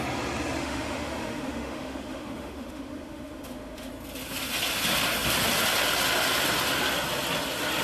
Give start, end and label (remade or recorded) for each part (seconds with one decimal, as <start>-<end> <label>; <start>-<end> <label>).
0.0-0.6 recorded; 0.6-3.9 remade; 3.9-7.8 recorded